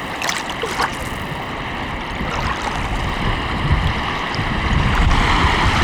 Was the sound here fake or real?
real